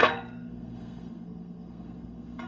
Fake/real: fake